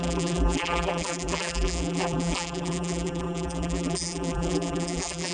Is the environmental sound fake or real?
fake